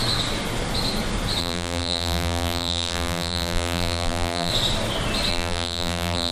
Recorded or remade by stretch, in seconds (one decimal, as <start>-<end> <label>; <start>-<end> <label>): 0.0-1.4 recorded; 1.4-4.5 remade; 4.5-5.3 recorded; 5.3-6.3 remade